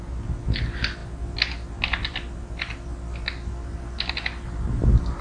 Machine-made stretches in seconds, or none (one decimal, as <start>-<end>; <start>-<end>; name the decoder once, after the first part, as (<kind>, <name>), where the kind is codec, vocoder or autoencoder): none